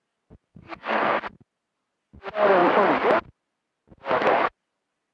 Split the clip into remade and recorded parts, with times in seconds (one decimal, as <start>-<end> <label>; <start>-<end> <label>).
0.0-0.5 recorded; 0.5-1.2 remade; 1.2-5.1 recorded